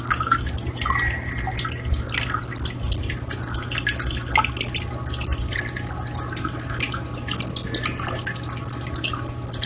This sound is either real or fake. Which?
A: real